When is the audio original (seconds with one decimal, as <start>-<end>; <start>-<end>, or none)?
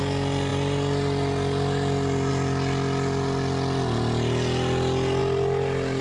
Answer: 0.0-6.0